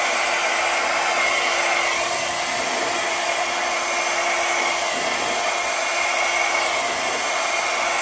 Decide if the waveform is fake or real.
real